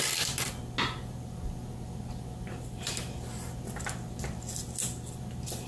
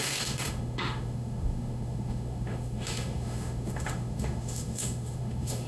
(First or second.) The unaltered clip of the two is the first